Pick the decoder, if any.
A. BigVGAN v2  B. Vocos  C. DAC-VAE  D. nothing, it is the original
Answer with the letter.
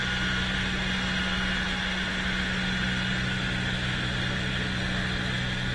D